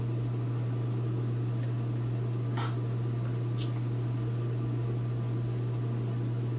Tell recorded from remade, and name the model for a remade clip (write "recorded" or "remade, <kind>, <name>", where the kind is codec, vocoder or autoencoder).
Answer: recorded